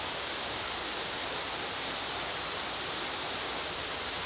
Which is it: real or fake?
real